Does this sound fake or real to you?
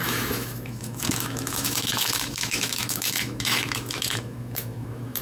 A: fake